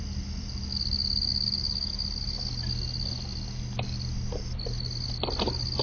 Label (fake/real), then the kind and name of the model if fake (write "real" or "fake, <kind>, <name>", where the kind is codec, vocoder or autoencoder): real